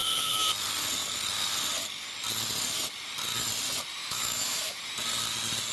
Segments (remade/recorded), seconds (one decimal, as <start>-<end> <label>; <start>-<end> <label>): 0.0-0.5 remade; 0.5-4.0 recorded; 4.0-4.8 remade; 4.8-5.7 recorded